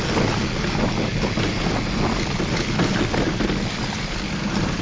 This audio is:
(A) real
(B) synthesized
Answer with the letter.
A